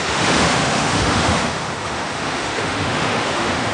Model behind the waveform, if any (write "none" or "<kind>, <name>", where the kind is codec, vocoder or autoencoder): autoencoder, DAC-VAE